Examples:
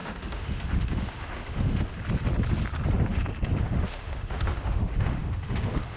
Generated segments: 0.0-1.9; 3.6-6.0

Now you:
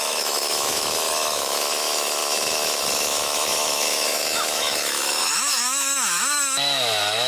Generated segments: 0.0-7.3

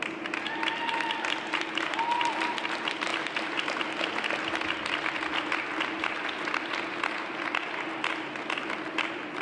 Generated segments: none

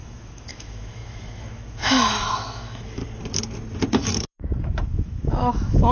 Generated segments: 0.0-3.0; 3.9-5.9

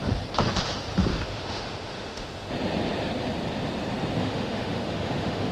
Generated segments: 1.1-2.5; 4.2-5.5